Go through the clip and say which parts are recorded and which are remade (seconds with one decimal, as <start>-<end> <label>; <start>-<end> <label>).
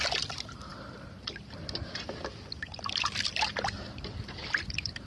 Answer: 0.0-5.1 remade